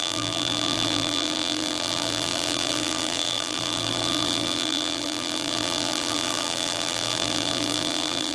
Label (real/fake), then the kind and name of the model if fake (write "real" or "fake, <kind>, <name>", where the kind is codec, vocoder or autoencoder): fake, vocoder, BigVGAN v2